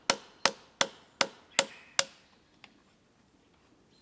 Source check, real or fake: real